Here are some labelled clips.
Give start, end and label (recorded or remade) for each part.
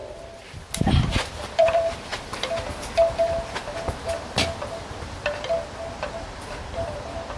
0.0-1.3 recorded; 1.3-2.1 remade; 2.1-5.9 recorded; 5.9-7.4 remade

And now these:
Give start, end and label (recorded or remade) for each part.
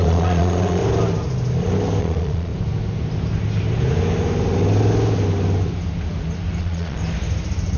0.0-0.8 remade; 0.8-2.0 recorded; 2.0-2.5 remade; 2.5-6.6 recorded; 6.6-7.0 remade; 7.0-7.8 recorded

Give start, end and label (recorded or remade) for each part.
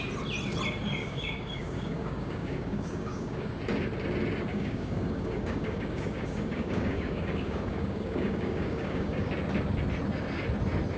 0.0-1.0 recorded; 1.0-3.5 remade; 3.5-4.5 recorded; 4.5-9.3 remade; 9.3-11.0 recorded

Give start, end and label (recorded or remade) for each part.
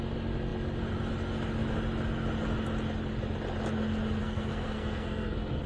0.0-4.2 recorded; 4.2-5.7 remade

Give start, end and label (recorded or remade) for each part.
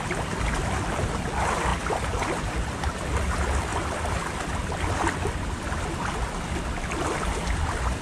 0.0-8.0 recorded